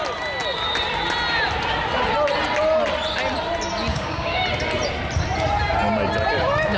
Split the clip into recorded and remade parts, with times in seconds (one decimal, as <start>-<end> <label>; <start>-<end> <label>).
0.0-3.9 recorded; 3.9-4.4 remade; 4.4-6.8 recorded